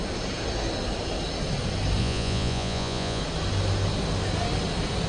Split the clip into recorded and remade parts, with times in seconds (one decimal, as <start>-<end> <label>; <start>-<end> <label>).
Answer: 0.0-2.0 recorded; 2.0-3.2 remade; 3.2-5.1 recorded